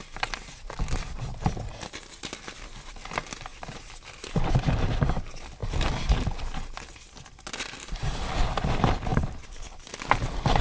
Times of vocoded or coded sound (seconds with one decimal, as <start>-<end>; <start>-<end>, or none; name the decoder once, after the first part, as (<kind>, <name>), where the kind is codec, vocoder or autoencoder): 3.5-4.7 (vocoder, BigVGAN v2); 9.1-10.6